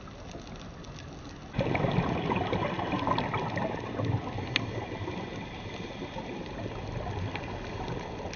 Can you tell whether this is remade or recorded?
recorded